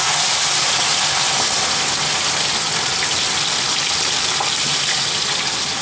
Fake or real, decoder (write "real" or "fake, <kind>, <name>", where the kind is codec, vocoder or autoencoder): real